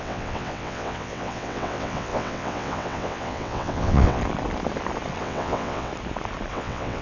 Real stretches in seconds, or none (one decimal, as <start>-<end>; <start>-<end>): 4.2-5.2; 5.9-6.5